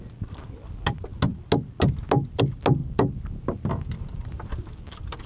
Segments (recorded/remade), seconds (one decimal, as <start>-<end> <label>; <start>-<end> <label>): 0.0-5.3 recorded